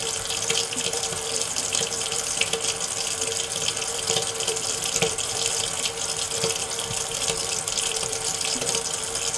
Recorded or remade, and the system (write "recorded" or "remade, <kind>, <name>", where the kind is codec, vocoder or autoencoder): remade, vocoder, BigVGAN v2